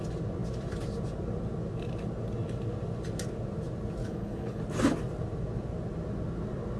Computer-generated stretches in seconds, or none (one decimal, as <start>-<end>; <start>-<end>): 4.0-4.6